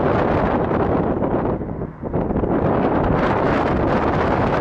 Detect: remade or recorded recorded